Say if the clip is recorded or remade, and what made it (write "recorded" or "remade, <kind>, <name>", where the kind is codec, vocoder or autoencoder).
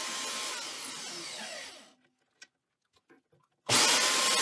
recorded